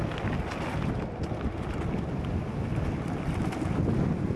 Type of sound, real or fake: real